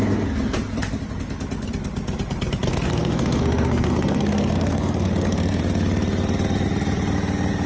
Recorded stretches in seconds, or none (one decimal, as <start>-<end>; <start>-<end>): 0.0-2.7; 5.6-7.7